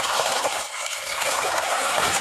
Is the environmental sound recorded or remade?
remade